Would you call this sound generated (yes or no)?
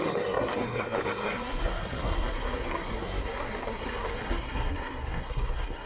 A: yes